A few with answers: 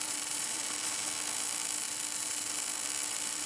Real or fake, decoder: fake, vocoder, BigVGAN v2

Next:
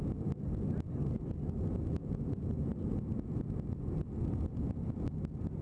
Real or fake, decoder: real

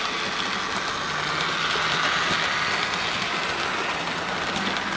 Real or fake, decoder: real